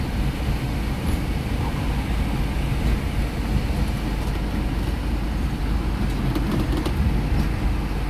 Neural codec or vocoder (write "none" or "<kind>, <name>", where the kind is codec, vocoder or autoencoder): none